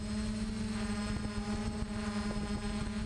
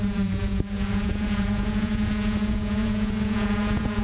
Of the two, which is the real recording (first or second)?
first